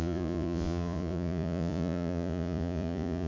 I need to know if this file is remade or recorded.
remade